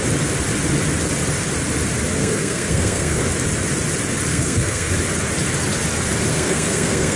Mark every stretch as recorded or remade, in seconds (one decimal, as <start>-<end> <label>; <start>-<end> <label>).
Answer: 0.0-2.2 recorded; 2.2-3.2 remade; 3.2-4.3 recorded; 4.3-4.9 remade; 4.9-6.3 recorded; 6.3-7.2 remade